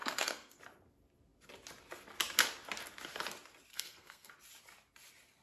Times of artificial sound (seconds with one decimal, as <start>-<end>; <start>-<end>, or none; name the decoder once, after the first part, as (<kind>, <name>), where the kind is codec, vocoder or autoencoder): 0.0-0.6 (codec, SNAC); 3.7-4.3